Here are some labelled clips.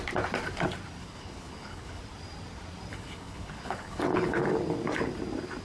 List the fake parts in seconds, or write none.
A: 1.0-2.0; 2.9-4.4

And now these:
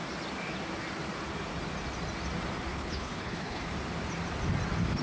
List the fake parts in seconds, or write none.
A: 2.7-3.6